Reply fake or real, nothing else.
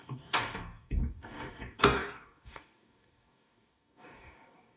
fake